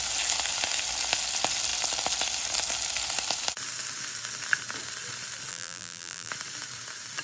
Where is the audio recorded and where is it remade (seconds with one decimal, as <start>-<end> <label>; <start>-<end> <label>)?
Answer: 0.0-5.5 recorded; 5.5-6.3 remade; 6.3-7.2 recorded